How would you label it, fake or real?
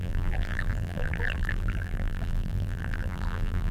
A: fake